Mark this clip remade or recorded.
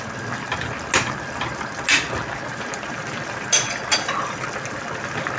recorded